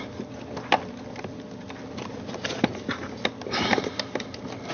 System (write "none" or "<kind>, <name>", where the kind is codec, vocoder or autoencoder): none